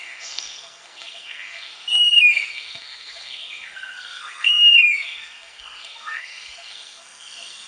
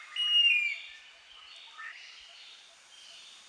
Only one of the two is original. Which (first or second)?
second